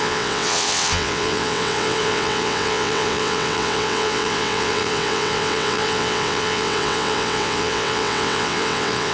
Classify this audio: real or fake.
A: fake